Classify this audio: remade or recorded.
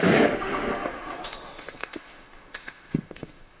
remade